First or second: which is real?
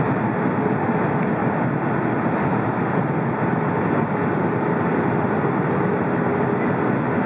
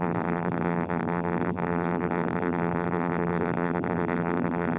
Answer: first